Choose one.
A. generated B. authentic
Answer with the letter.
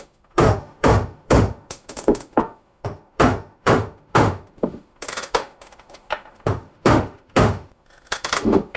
A